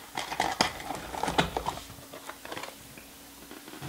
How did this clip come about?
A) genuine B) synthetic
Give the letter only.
A